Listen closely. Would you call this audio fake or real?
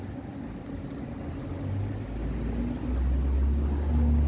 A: real